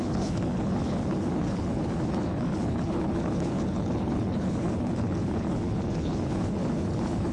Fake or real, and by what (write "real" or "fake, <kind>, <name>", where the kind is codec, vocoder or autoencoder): fake, codec, HILCodec